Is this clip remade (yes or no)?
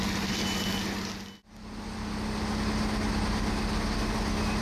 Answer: no